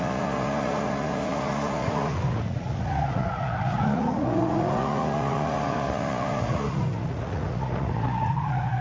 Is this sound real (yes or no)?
no